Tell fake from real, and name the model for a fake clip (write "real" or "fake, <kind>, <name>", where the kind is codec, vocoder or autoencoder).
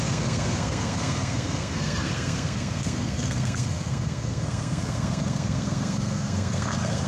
fake, codec, SNAC